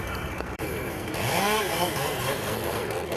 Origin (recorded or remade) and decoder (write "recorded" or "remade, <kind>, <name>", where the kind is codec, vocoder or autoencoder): remade, codec, SNAC